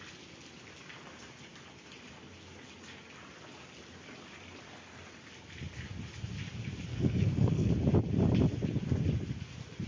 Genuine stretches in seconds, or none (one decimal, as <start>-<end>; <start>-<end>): 0.0-6.9; 7.7-9.9